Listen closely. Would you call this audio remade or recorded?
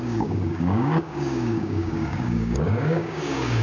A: remade